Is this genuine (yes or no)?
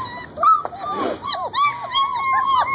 yes